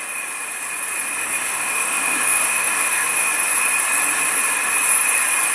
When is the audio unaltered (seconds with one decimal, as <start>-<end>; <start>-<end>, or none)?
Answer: 0.0-1.2; 3.3-5.5